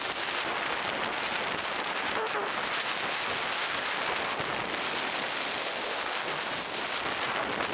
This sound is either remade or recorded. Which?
recorded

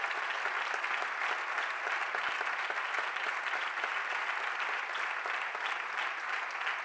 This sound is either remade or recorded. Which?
recorded